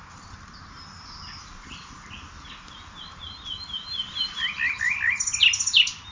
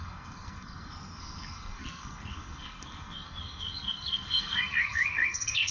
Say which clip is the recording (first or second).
first